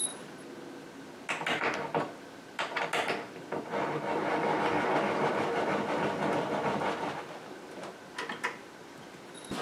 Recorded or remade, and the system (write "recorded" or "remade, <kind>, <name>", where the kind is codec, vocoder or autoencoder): recorded